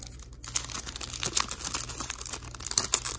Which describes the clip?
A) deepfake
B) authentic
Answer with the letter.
B